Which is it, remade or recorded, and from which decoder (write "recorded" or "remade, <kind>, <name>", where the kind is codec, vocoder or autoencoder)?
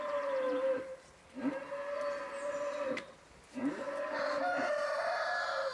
recorded